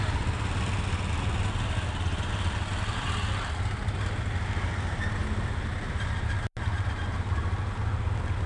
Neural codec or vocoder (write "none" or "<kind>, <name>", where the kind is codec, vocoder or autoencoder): none